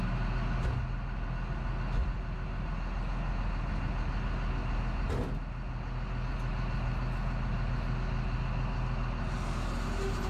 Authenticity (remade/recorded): recorded